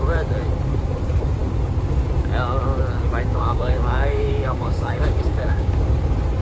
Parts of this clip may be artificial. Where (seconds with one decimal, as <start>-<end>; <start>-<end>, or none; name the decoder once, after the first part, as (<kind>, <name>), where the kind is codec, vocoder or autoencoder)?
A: 3.3-5.7 (codec, DAC)